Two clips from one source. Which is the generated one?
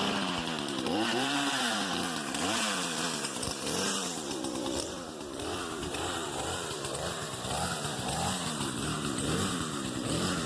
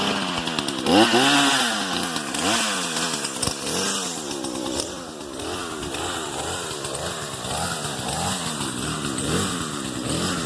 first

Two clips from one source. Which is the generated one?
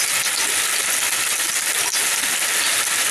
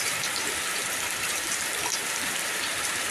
second